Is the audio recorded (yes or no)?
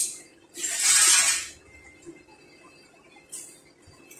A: yes